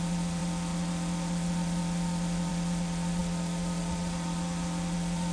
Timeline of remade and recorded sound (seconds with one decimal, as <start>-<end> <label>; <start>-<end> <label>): 0.0-5.3 remade